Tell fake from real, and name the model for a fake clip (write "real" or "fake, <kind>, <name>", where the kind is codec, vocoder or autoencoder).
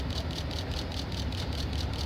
fake, vocoder, BigVGAN v2